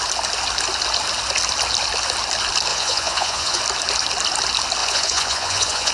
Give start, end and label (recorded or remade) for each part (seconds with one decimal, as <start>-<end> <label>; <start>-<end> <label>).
0.0-2.7 recorded; 2.7-3.6 remade; 3.6-4.8 recorded; 4.8-5.9 remade